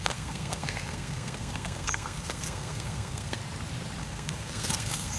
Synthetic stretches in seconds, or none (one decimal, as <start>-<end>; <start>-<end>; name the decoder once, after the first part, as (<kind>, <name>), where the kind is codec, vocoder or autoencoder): 0.0-3.4 (codec, SNAC); 4.0-5.2